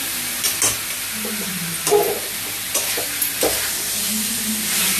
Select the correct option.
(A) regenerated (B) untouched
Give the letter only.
B